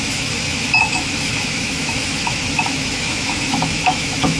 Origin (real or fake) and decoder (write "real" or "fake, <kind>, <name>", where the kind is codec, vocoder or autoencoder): fake, autoencoder, DAC-VAE